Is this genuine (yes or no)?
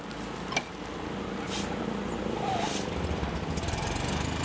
yes